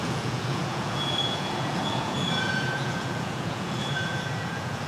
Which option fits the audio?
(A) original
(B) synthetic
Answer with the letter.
B